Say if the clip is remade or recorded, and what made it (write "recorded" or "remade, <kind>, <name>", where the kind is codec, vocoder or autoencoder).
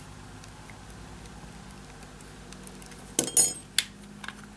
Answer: recorded